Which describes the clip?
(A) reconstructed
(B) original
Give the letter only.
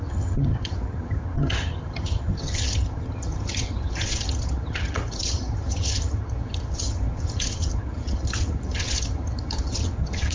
A